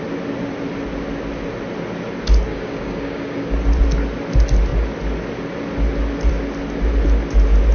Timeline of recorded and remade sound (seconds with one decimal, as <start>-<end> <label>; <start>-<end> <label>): 0.0-2.5 recorded; 2.5-3.5 remade; 3.5-7.7 recorded